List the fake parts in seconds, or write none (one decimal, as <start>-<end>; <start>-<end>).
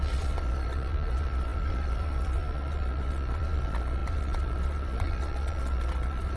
0.0-6.4